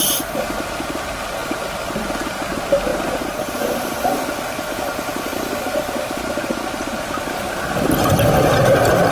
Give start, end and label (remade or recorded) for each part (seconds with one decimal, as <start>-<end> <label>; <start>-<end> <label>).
0.0-2.9 recorded; 2.9-4.2 remade; 4.2-9.1 recorded